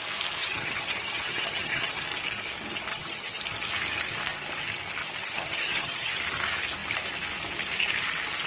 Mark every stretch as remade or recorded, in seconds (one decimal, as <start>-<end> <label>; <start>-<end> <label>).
0.0-0.4 recorded; 0.4-2.0 remade; 2.0-2.9 recorded; 2.9-3.4 remade; 3.4-5.0 recorded; 5.0-6.2 remade; 6.2-8.5 recorded